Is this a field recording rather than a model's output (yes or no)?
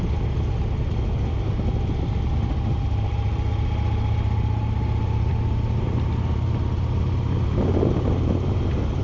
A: yes